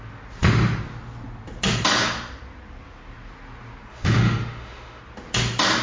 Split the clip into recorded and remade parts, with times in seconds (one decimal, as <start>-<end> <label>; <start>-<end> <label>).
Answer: 0.0-3.9 recorded; 3.9-5.0 remade; 5.0-5.8 recorded